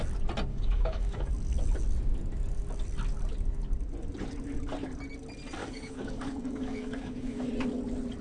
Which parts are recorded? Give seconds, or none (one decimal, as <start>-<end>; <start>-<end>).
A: 0.0-0.5; 1.3-5.6; 7.5-8.2